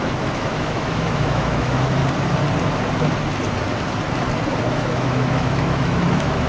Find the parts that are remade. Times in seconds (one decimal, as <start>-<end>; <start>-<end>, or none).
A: 0.0-2.0; 4.6-6.5